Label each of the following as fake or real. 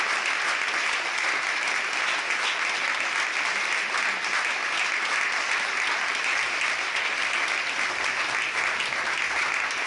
real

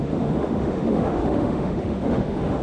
fake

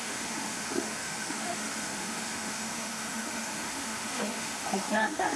fake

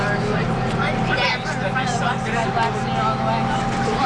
real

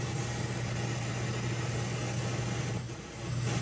real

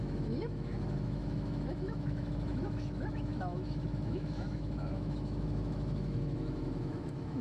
fake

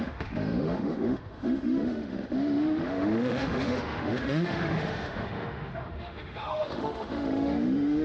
fake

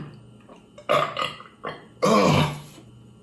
real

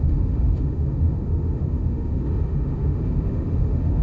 fake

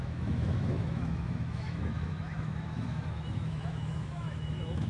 fake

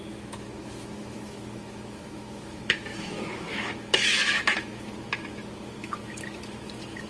fake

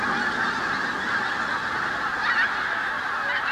real